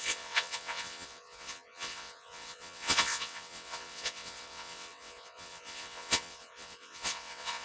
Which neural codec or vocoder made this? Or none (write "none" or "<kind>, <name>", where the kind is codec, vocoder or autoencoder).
vocoder, WaveNeXt